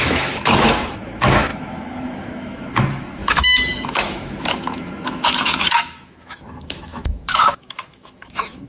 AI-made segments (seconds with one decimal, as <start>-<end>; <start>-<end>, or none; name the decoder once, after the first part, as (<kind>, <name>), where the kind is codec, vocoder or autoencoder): 0.0-8.7 (autoencoder, DAC-VAE)